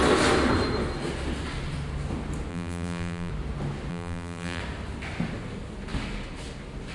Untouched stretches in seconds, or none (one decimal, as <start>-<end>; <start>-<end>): 0.0-2.5; 3.3-3.9; 4.6-6.9